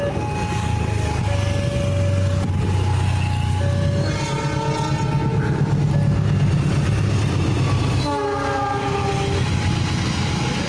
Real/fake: real